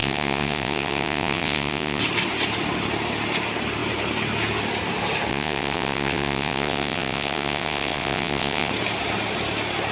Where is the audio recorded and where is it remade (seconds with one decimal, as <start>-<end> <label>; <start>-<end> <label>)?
0.0-2.0 remade; 2.0-5.3 recorded; 5.3-8.7 remade; 8.7-9.9 recorded